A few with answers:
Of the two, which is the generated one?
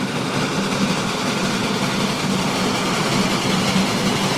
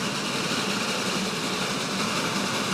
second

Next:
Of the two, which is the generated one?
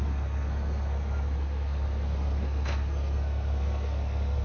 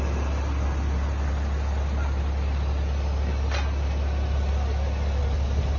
first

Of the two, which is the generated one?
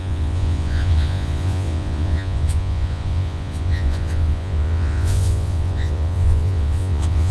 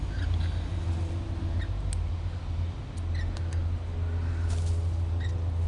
first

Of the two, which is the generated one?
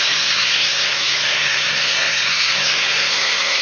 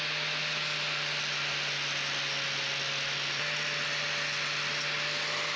first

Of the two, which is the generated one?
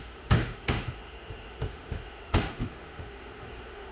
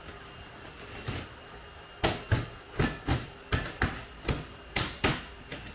first